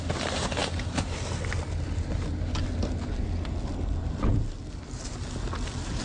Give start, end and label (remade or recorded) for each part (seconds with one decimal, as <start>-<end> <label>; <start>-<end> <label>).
0.0-6.0 recorded